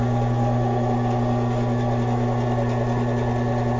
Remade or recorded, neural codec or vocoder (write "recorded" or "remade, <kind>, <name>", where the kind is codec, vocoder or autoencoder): recorded